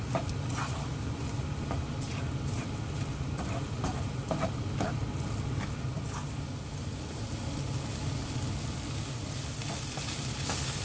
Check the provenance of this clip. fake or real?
real